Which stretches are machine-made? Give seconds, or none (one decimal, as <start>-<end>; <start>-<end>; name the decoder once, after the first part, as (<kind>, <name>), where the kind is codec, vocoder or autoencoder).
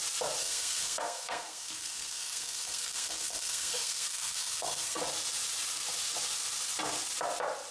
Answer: 0.4-5.0 (codec, SNAC)